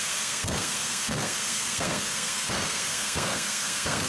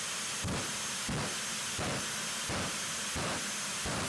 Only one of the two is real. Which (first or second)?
second